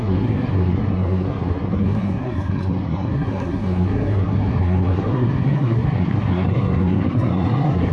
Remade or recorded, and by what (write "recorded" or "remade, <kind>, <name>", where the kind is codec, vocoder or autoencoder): remade, codec, SNAC